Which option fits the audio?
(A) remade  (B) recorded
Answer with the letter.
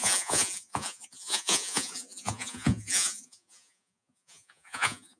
A